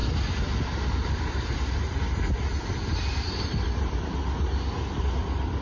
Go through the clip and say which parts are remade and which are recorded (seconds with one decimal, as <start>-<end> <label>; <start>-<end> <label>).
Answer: 0.0-5.6 recorded